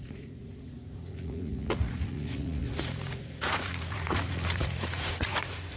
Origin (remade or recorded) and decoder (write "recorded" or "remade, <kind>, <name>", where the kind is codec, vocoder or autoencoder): remade, vocoder, Vocos